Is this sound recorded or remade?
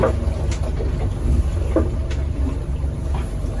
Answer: recorded